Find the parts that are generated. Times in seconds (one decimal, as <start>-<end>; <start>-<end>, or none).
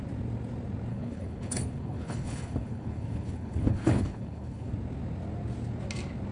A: 0.9-4.7